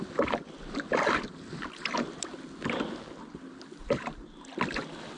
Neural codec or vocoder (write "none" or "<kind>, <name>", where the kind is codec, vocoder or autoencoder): none